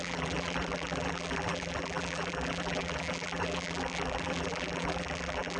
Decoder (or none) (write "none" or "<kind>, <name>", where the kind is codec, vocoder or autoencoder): vocoder, BigVGAN v2